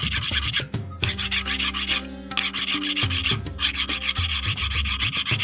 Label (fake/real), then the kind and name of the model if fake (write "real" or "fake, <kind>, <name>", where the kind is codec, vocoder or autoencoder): real